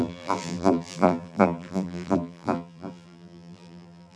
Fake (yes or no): yes